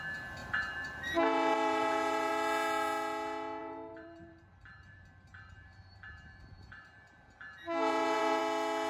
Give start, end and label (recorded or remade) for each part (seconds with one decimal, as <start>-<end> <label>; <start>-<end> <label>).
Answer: 0.0-0.4 recorded; 0.4-2.3 remade; 2.3-3.6 recorded; 3.6-8.4 remade; 8.4-8.9 recorded